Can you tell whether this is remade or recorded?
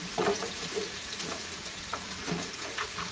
remade